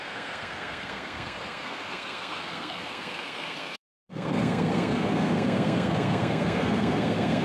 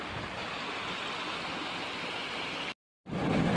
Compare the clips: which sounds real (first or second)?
second